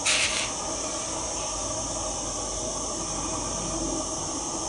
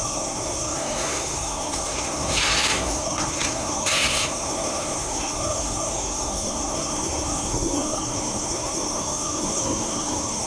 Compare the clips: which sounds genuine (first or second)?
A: first